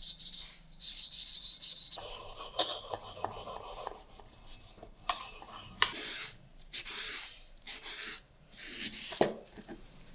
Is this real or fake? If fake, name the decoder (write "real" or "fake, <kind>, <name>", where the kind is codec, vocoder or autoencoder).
fake, vocoder, BigVGAN v2